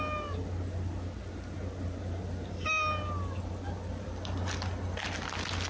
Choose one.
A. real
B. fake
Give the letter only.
A